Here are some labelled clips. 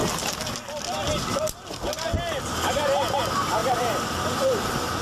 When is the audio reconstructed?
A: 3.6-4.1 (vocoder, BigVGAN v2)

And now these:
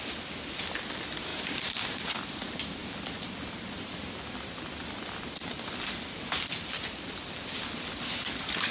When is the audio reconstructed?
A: 1.3-2.1 (vocoder, BigVGAN v2)

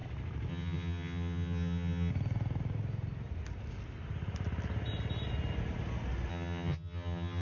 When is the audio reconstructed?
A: 0.5-2.1 (vocoder, HiFi-GAN); 6.3-7.4

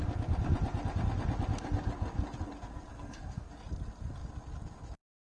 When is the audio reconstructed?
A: 2.9-3.5 (codec, SNAC)